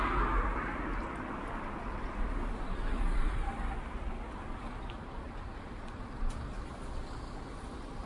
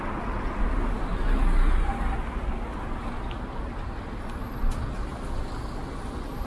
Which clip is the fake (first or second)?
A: first